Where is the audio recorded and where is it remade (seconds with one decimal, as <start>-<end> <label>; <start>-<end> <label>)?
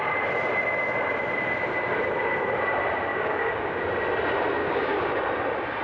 0.0-3.1 recorded; 3.1-3.8 remade; 3.8-4.6 recorded; 4.6-5.2 remade; 5.2-5.8 recorded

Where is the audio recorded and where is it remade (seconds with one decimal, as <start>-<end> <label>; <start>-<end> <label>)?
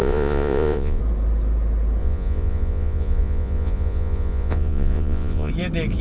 0.0-1.0 remade; 1.0-2.0 recorded; 2.0-5.5 remade; 5.5-6.0 recorded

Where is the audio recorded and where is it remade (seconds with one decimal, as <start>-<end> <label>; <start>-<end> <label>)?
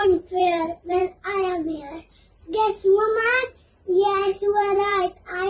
0.0-1.0 remade; 1.0-3.0 recorded; 3.0-3.6 remade; 3.6-4.2 recorded; 4.2-5.5 remade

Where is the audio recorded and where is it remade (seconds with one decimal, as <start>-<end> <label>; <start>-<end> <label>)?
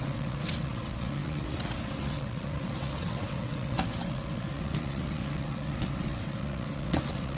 0.0-7.4 remade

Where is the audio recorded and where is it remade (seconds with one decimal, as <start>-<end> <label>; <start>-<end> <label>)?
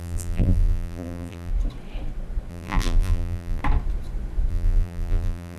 0.0-1.5 remade; 1.5-2.5 recorded; 2.5-3.6 remade; 3.6-4.5 recorded; 4.5-5.6 remade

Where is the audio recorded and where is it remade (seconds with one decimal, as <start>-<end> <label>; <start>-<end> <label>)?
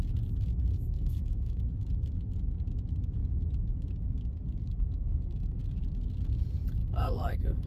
0.0-0.7 recorded; 0.7-1.7 remade; 1.7-4.6 recorded; 4.6-5.6 remade; 5.6-6.8 recorded; 6.8-7.7 remade